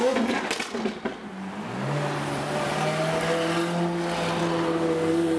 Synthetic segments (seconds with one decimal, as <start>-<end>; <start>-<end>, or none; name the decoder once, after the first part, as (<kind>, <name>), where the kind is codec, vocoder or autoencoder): none